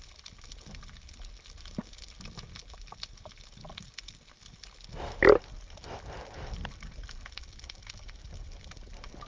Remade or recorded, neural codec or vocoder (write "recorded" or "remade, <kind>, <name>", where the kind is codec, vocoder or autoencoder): recorded